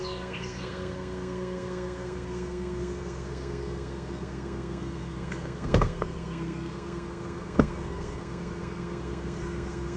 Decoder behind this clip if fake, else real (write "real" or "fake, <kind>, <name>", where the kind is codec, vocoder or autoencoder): fake, codec, SNAC